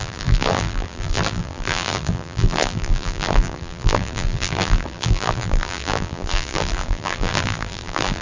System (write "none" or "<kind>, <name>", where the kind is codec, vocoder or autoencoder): vocoder, BigVGAN v2